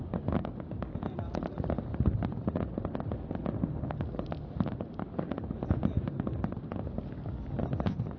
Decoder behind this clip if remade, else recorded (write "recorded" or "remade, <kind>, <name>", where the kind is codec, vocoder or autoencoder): recorded